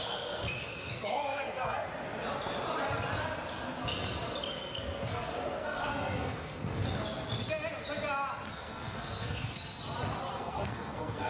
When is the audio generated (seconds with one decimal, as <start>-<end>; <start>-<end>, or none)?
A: 0.0-1.9; 4.5-6.8; 8.5-9.8; 10.3-11.3